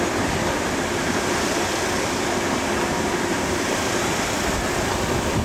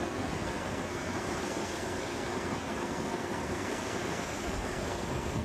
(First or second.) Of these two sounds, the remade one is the second